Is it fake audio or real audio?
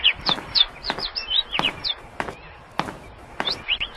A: real